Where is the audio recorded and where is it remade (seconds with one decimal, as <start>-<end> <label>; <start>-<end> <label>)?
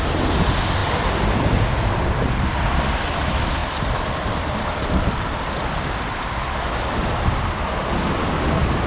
0.0-0.8 recorded; 0.8-2.6 remade; 2.6-3.6 recorded; 3.6-5.6 remade; 5.6-8.9 recorded